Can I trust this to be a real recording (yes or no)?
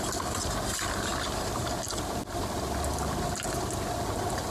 yes